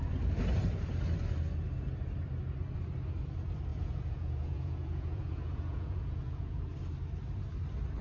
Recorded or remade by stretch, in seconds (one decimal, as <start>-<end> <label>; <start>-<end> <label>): 0.0-3.7 recorded; 3.7-6.6 remade; 6.6-8.0 recorded